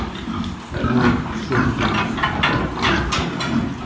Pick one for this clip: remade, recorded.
recorded